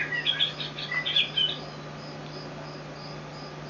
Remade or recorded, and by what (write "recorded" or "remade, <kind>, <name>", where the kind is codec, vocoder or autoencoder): recorded